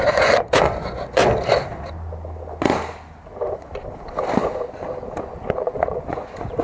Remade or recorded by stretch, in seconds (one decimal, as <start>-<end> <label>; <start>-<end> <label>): 0.0-1.2 remade; 1.2-5.2 recorded; 5.2-6.6 remade